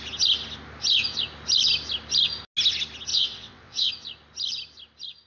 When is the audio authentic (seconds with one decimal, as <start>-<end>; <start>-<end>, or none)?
0.0-3.1; 3.9-5.3